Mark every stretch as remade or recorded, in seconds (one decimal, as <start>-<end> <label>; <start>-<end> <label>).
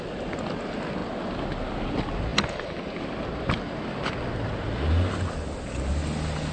0.0-6.5 recorded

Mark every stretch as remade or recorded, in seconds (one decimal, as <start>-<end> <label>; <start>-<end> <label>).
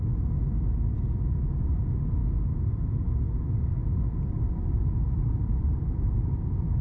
0.0-3.8 recorded; 3.8-6.8 remade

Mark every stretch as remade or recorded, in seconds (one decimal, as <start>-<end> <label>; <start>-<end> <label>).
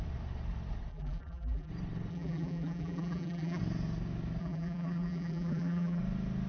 0.0-0.9 recorded; 0.9-1.7 remade; 1.7-2.1 recorded; 2.1-3.6 remade; 3.6-4.4 recorded; 4.4-6.0 remade; 6.0-6.5 recorded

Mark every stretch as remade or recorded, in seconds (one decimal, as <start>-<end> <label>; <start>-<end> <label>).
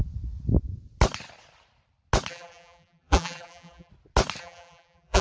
0.0-2.3 recorded; 2.3-3.9 remade; 3.9-4.4 recorded; 4.4-5.2 remade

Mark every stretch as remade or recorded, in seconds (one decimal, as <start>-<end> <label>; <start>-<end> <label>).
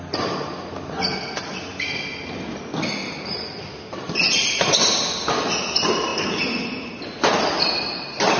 0.0-8.4 recorded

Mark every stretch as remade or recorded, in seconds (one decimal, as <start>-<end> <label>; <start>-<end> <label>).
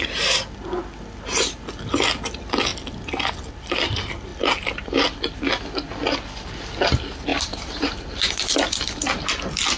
0.0-7.3 recorded; 7.3-9.3 remade; 9.3-9.8 recorded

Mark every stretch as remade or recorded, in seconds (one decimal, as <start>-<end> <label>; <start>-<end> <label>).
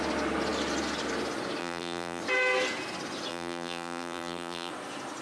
0.0-1.6 recorded; 1.6-2.2 remade; 2.2-3.3 recorded; 3.3-4.7 remade; 4.7-5.2 recorded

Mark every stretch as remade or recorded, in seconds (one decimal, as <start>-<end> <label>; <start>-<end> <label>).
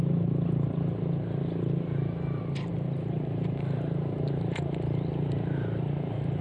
0.0-2.7 recorded; 2.7-6.4 remade